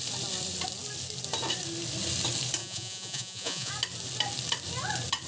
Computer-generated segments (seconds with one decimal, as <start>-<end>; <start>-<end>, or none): 2.6-3.7